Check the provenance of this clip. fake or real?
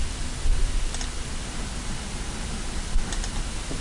real